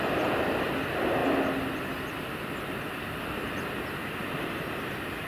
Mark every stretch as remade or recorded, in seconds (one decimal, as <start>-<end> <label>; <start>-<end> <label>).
0.0-5.3 recorded